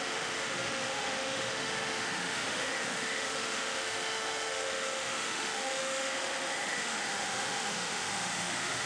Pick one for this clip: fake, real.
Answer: fake